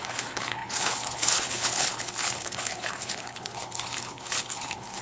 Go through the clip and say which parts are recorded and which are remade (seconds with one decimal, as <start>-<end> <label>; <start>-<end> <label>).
0.0-5.0 remade